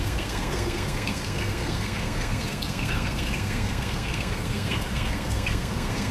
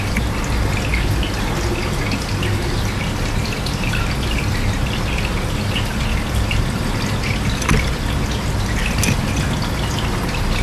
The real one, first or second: second